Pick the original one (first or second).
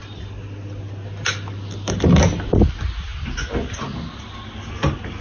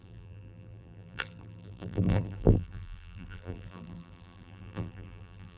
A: first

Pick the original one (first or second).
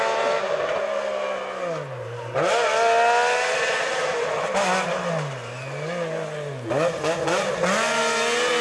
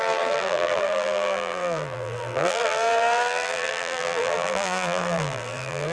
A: first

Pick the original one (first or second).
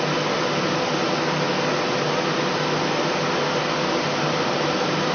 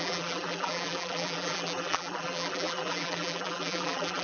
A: first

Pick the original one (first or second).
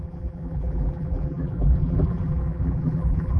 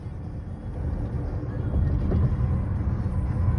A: second